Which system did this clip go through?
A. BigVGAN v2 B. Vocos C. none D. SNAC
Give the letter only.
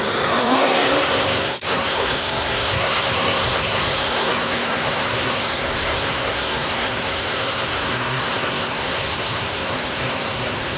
D